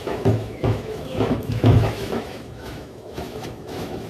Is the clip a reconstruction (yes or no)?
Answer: yes